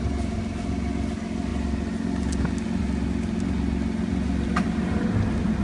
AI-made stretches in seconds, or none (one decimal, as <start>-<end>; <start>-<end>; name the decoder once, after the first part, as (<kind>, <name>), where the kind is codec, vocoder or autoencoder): none